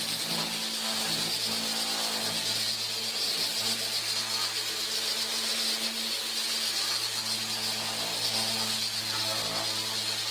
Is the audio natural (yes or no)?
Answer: yes